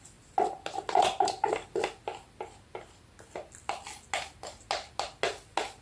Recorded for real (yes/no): yes